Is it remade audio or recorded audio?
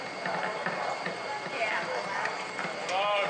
recorded